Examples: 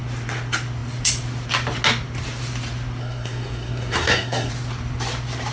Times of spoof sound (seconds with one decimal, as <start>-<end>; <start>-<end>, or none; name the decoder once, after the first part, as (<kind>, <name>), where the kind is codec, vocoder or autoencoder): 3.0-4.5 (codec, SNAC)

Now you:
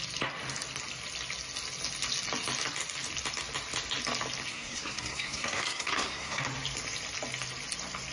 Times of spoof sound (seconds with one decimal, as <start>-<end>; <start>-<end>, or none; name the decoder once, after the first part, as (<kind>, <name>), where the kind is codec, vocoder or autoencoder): 4.5-6.4 (codec, SNAC)

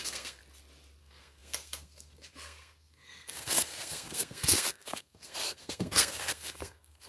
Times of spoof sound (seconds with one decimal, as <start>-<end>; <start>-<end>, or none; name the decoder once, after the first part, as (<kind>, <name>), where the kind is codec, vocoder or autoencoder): 0.0-0.4 (codec, SNAC); 1.0-7.1

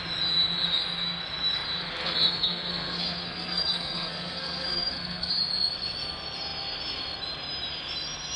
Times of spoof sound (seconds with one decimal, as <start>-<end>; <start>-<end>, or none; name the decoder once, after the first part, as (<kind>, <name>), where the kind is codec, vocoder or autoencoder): 2.0-5.3 (codec, SNAC)